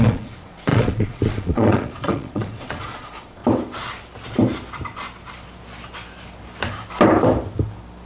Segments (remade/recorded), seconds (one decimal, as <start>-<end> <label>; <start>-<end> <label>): 0.0-3.4 remade; 3.4-8.1 recorded